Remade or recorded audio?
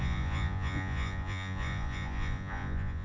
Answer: remade